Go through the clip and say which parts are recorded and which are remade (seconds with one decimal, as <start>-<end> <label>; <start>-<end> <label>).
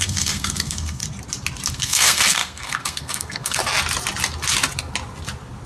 0.0-1.0 remade; 1.0-1.7 recorded; 1.7-3.6 remade; 3.6-5.7 recorded